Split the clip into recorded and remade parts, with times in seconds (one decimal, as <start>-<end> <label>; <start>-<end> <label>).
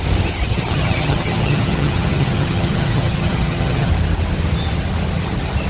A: 0.0-0.5 recorded; 0.5-3.9 remade; 3.9-5.7 recorded